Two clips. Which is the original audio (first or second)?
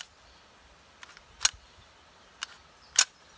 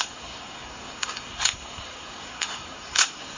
first